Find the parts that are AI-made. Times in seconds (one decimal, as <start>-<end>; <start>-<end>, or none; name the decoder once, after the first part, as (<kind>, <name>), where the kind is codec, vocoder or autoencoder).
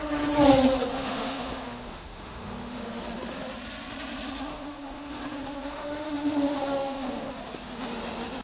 0.9-3.0 (autoencoder, DAC-VAE); 4.5-7.3